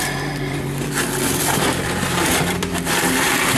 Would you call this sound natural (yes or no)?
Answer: no